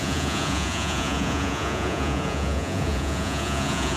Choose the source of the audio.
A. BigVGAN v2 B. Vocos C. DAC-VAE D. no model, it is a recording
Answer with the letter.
B